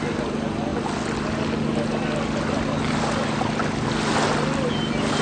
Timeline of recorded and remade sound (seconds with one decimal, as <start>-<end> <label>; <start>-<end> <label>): 0.0-5.2 recorded